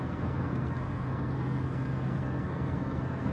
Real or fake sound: fake